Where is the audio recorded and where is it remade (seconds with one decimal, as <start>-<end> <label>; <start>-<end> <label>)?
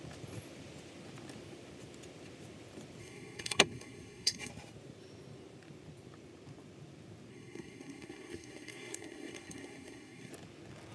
0.0-3.0 recorded; 3.0-4.5 remade; 4.5-7.3 recorded; 7.3-10.3 remade; 10.3-10.9 recorded